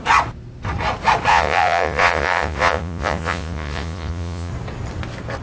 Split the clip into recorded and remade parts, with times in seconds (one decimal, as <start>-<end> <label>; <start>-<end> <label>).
0.0-1.3 recorded; 1.3-4.5 remade; 4.5-5.4 recorded

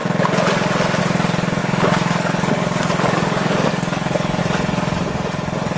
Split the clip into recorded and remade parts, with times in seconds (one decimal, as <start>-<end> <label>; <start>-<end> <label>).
0.0-1.6 recorded; 1.6-4.4 remade; 4.4-5.8 recorded

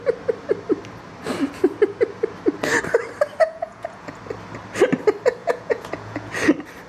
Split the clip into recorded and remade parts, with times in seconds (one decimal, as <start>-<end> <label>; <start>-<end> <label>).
0.0-3.4 recorded; 3.4-4.2 remade; 4.2-5.4 recorded; 5.4-6.3 remade; 6.3-6.9 recorded

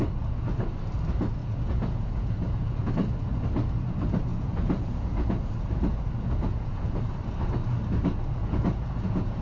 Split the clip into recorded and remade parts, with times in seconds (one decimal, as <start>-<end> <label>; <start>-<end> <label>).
0.0-1.4 recorded; 1.4-2.9 remade; 2.9-4.3 recorded; 4.3-7.0 remade; 7.0-8.4 recorded; 8.4-9.4 remade

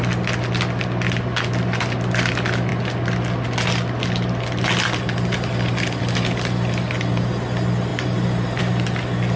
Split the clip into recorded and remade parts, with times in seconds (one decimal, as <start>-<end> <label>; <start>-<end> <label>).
0.0-7.9 recorded; 7.9-8.6 remade; 8.6-9.4 recorded

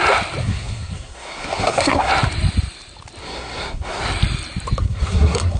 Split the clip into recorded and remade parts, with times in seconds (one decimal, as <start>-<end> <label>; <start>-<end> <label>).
0.0-0.4 recorded; 0.4-2.1 remade; 2.1-3.2 recorded; 3.2-4.0 remade; 4.0-4.8 recorded; 4.8-5.6 remade